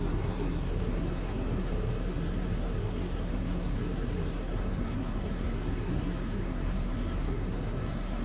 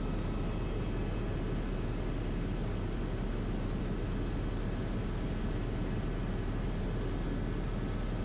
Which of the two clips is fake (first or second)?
first